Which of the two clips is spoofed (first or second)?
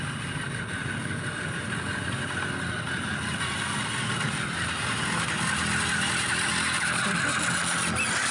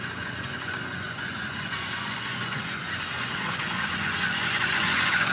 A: second